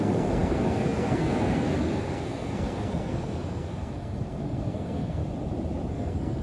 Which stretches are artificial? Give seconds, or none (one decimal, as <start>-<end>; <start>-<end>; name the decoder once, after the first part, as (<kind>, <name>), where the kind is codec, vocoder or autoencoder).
0.0-5.2 (codec, SNAC); 5.9-6.4